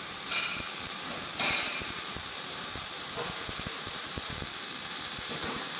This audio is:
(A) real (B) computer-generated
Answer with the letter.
B